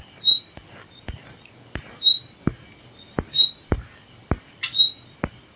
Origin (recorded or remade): recorded